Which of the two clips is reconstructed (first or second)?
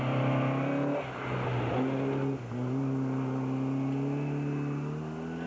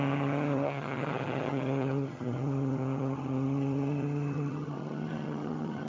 second